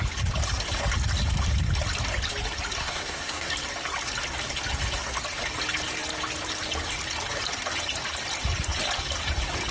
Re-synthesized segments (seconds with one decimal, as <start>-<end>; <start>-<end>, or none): 2.8-3.5